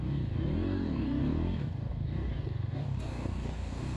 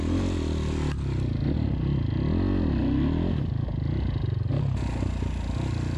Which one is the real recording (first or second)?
second